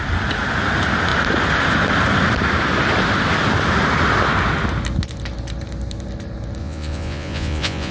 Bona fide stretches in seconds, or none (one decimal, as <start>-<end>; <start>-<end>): 0.0-6.6